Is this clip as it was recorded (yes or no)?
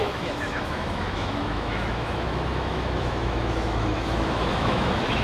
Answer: no